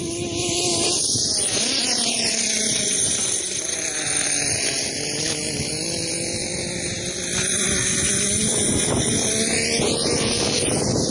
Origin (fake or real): real